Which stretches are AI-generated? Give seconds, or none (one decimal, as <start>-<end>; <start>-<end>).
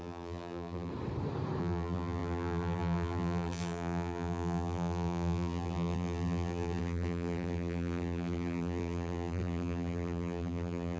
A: 0.0-0.9; 1.6-11.0